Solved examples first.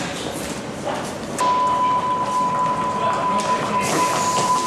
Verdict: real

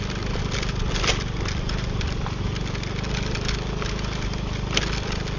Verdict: real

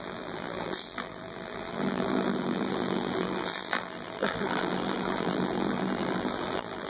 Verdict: fake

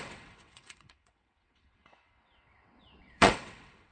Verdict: fake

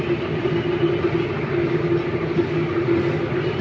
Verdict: real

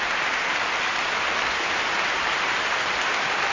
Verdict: real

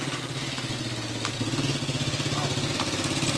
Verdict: real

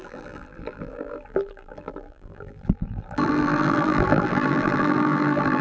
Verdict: fake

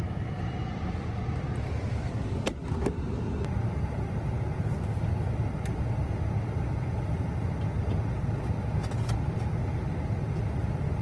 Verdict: real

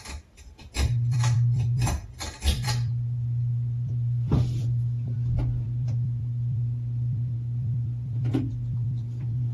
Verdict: fake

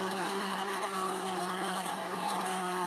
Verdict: fake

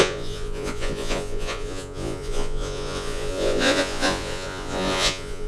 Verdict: fake